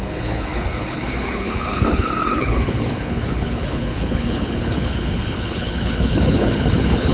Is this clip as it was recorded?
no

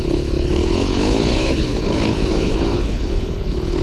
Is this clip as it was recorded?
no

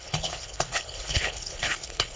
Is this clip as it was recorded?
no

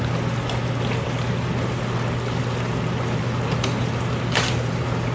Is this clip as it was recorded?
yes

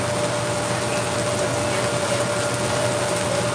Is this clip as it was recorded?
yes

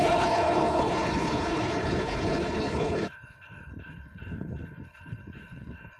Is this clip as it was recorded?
no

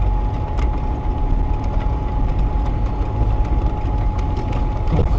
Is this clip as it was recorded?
yes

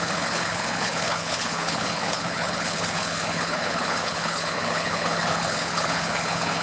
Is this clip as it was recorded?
no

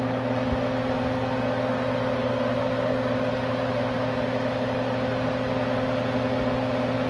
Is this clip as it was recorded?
yes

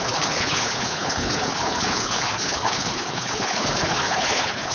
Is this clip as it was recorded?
no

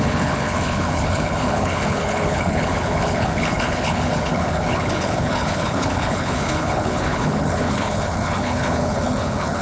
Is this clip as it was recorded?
no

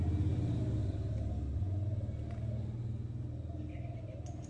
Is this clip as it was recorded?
yes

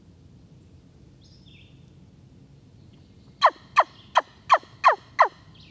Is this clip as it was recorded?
yes